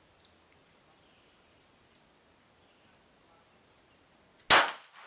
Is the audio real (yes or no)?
yes